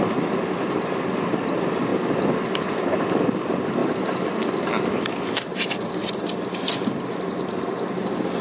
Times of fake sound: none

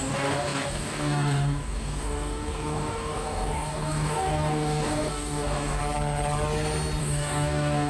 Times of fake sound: 0.0-5.8 (codec, DAC); 7.0-7.9

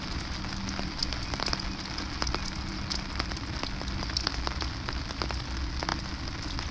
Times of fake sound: none